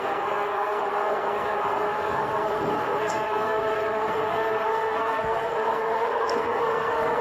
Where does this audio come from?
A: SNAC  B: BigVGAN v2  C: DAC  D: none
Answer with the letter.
A